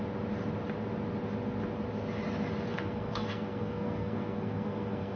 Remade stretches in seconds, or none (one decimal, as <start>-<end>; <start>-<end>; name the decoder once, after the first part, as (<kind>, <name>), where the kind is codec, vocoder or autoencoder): 2.7-5.2 (codec, SNAC)